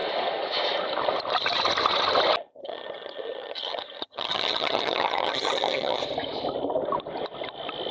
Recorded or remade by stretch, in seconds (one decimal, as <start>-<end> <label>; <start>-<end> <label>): 0.0-2.6 recorded; 2.6-6.0 remade; 6.0-7.9 recorded